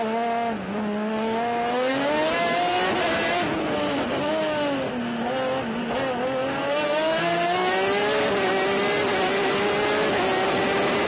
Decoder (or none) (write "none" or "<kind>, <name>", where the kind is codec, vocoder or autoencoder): none